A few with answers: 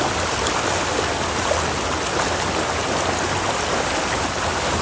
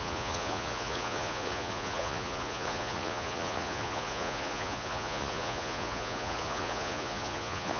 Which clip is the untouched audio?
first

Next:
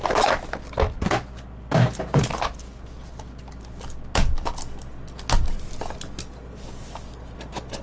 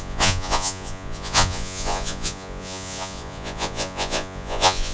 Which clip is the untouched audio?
first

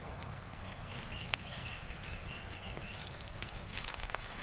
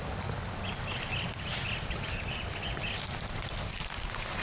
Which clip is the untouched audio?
second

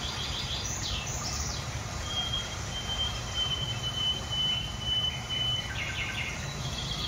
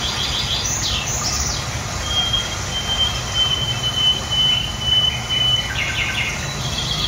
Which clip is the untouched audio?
second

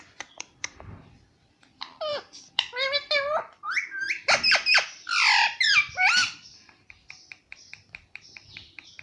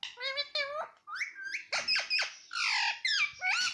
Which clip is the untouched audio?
second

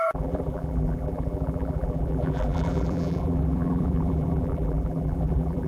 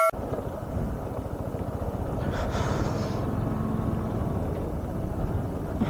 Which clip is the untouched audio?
second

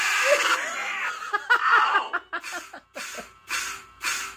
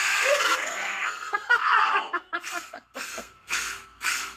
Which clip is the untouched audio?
first